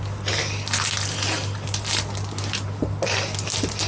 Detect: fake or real real